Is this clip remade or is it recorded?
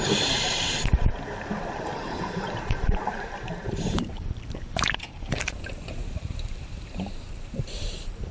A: remade